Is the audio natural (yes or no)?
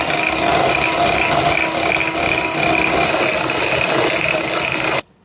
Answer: yes